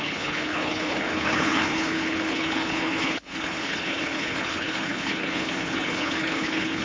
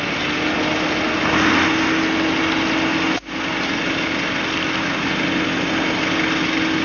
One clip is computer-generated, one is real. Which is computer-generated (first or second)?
first